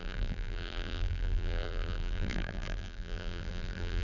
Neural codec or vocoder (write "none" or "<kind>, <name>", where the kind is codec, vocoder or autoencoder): vocoder, BigVGAN v2